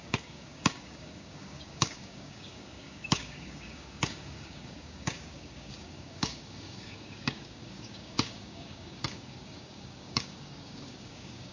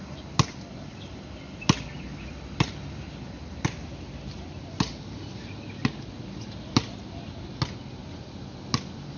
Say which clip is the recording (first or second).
second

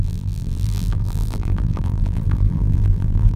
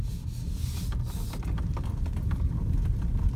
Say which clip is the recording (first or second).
second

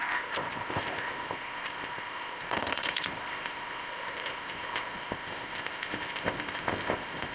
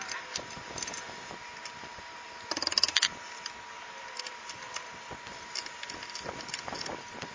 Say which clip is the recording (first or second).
second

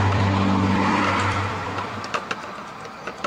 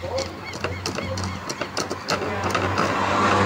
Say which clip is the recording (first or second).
second